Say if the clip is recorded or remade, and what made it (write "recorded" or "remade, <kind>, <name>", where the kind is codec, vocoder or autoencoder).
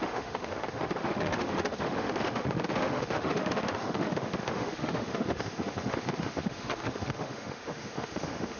remade, autoencoder, DAC-VAE